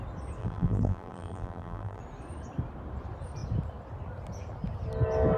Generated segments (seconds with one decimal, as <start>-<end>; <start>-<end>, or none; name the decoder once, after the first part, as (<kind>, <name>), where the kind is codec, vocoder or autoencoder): 0.4-2.0 (vocoder, BigVGAN v2)